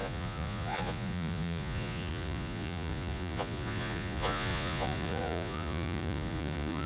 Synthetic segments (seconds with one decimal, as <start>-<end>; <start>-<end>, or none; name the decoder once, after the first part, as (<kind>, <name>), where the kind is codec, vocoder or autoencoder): 0.0-6.9 (vocoder, Vocos)

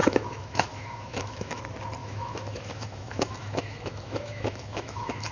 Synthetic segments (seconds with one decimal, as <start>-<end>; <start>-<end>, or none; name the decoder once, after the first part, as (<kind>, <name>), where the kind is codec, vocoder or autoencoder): 0.0-1.6 (autoencoder, DAC-VAE); 2.0-5.3

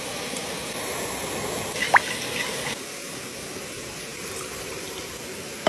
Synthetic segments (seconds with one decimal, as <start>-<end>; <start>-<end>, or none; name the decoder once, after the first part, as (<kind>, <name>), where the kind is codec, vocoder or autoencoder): 0.0-0.4 (vocoder, BigVGAN v2); 3.6-5.7

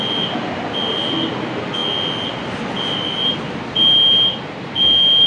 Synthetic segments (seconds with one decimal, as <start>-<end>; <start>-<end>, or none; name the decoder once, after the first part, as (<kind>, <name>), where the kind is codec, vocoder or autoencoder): none

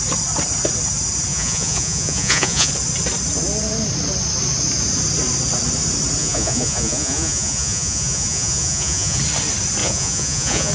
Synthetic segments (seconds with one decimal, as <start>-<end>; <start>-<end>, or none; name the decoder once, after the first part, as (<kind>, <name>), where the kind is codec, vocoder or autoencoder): 1.3-2.7 (vocoder, Vocos); 6.2-9.2; 9.8-10.7

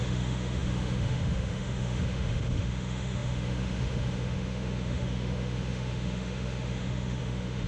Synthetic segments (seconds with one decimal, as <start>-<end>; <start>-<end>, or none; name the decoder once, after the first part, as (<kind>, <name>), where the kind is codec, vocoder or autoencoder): 0.0-7.7 (autoencoder, DAC-VAE)

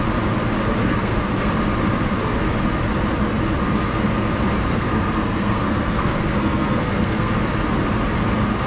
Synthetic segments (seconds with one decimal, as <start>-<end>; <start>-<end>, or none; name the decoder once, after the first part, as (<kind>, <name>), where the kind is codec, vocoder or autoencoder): 0.8-1.5 (codec, SNAC); 4.7-7.3